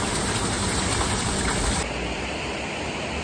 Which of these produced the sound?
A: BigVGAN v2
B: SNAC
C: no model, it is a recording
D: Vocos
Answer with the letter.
A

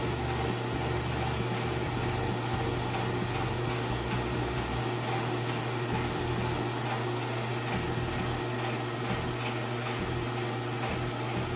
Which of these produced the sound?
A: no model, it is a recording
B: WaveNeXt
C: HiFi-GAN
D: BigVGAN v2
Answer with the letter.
A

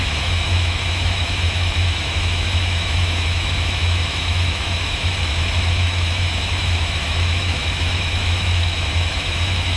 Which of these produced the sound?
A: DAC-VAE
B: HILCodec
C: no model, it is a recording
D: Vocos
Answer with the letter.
A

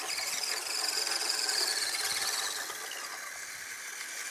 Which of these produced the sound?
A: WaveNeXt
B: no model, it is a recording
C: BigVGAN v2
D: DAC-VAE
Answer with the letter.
B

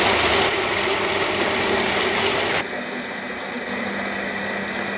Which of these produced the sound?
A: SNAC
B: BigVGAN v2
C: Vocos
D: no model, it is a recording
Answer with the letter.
D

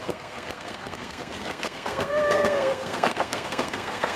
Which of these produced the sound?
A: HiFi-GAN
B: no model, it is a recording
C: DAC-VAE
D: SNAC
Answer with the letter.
D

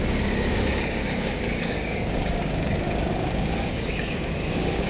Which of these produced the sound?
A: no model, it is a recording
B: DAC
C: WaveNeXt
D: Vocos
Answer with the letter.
B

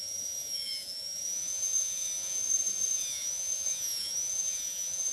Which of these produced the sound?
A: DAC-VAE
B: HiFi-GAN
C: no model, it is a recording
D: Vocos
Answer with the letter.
D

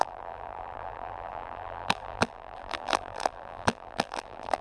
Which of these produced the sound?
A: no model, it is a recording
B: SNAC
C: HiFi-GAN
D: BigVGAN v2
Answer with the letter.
D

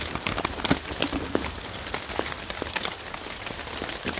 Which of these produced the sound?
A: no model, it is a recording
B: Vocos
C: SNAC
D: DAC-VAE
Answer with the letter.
A